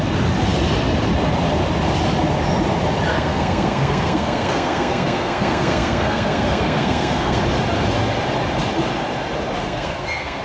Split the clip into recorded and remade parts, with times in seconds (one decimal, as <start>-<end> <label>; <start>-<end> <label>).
0.0-3.1 recorded; 3.1-7.4 remade; 7.4-9.6 recorded; 9.6-10.4 remade